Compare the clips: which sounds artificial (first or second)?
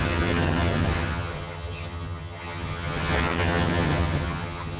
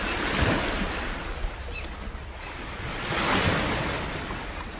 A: first